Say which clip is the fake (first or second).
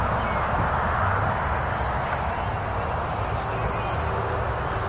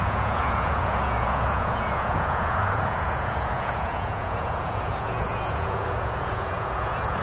second